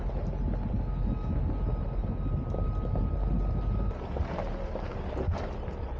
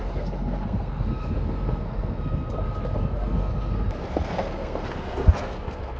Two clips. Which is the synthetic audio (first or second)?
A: second